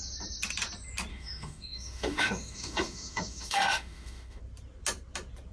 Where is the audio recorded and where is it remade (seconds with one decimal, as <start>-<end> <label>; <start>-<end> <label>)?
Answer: 0.0-1.1 recorded; 1.1-4.4 remade; 4.4-5.5 recorded